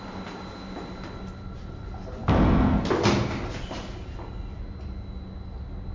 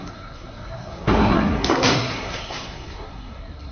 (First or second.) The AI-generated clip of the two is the second